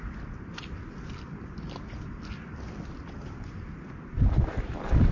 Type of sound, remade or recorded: recorded